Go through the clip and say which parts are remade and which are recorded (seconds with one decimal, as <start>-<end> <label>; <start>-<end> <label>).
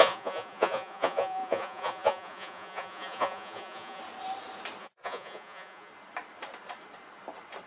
0.0-4.0 remade; 4.0-4.8 recorded; 4.8-5.9 remade; 5.9-7.7 recorded